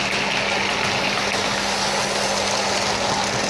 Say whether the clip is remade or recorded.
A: recorded